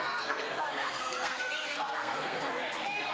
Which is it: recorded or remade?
remade